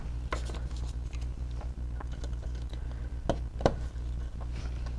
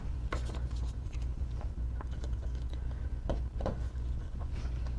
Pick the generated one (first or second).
second